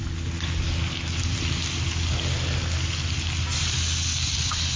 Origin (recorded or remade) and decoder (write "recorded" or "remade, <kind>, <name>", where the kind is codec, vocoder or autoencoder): recorded